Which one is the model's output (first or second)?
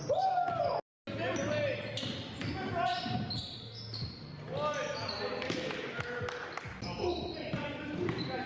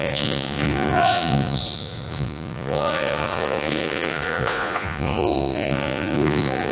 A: second